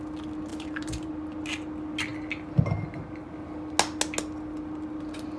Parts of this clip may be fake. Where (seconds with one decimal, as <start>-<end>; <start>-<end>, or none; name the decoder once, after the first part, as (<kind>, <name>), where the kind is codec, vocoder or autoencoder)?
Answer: 0.5-1.1 (vocoder, BigVGAN v2)